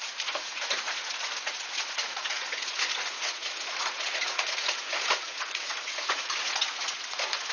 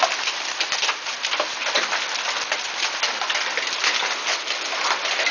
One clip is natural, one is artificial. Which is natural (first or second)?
second